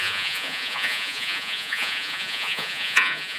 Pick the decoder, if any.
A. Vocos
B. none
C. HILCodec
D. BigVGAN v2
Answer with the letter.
A